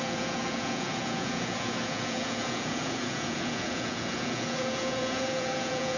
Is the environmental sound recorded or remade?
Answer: remade